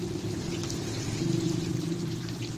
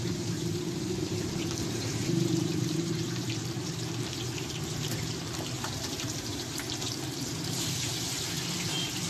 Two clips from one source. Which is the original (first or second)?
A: first